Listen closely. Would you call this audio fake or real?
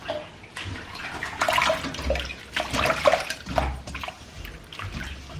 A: real